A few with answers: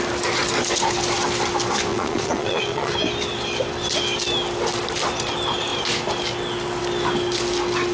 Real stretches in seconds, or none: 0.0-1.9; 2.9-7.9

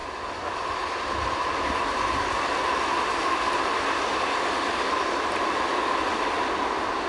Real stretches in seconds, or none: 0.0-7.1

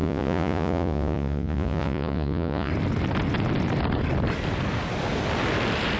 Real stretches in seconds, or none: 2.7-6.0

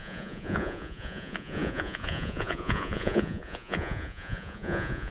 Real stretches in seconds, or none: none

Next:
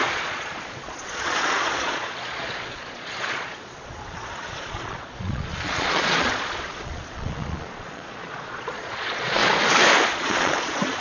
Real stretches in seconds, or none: 9.4-10.1

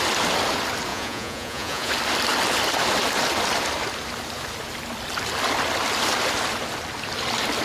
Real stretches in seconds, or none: 0.0-0.9; 1.9-7.6

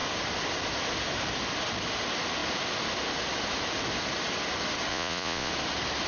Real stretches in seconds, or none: 0.0-4.9; 5.5-6.1